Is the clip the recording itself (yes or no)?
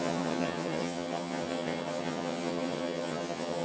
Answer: no